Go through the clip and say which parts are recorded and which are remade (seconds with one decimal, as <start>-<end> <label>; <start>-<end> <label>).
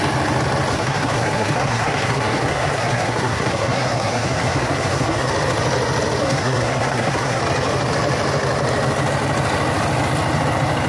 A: 0.0-0.7 recorded; 0.7-5.3 remade; 5.3-6.2 recorded; 6.2-7.4 remade; 7.4-10.9 recorded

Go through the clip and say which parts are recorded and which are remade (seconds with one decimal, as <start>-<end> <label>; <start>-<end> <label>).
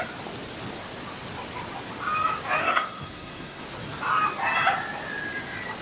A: 0.0-2.6 recorded; 2.6-3.6 remade; 3.6-5.8 recorded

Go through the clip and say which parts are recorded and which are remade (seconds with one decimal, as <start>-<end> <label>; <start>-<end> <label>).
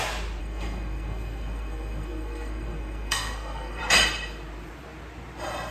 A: 0.0-0.4 recorded; 0.4-3.8 remade; 3.8-5.7 recorded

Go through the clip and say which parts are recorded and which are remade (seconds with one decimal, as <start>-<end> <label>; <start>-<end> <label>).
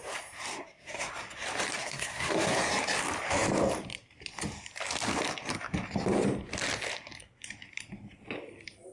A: 0.0-0.5 recorded; 0.5-1.1 remade; 1.1-1.8 recorded; 1.8-2.6 remade; 2.6-8.9 recorded